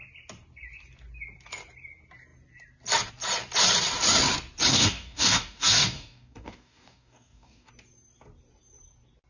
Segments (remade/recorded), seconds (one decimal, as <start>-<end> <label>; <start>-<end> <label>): 0.0-4.7 recorded; 4.7-7.7 remade; 7.7-9.3 recorded